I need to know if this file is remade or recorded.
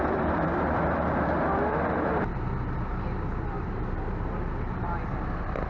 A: remade